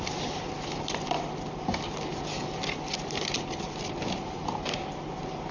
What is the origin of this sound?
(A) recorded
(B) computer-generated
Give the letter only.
A